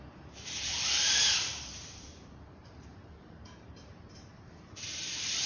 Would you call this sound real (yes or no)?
no